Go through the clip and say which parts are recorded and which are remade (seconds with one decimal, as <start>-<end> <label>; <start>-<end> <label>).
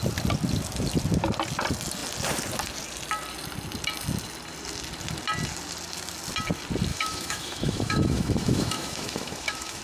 0.0-6.9 recorded; 6.9-9.8 remade